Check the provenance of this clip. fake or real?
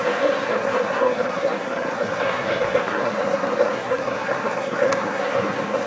fake